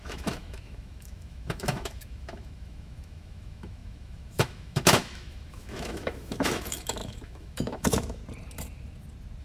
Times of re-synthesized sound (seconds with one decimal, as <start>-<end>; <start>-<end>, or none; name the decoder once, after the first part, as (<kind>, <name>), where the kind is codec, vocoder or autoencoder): 0.0-8.2 (autoencoder, DAC-VAE)